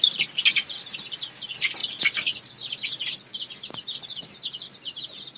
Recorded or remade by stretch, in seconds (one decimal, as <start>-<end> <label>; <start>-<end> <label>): 0.0-5.4 recorded